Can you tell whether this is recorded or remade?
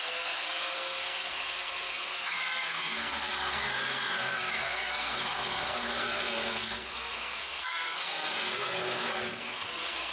remade